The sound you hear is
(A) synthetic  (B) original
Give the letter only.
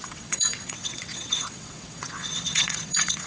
A